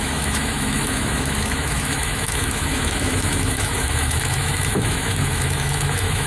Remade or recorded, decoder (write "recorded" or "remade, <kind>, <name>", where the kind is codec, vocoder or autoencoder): remade, autoencoder, DAC-VAE